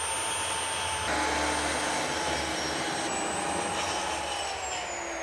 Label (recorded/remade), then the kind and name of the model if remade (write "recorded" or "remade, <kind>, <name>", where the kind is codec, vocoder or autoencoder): recorded